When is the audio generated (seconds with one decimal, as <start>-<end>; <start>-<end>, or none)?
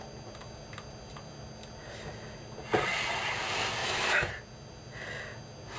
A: 3.8-4.3